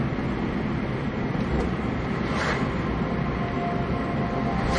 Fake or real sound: real